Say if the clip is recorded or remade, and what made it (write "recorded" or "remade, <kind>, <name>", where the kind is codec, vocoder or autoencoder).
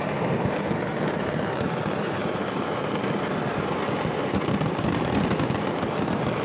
recorded